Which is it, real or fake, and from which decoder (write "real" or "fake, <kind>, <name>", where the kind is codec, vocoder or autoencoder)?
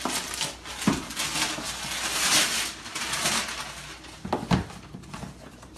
real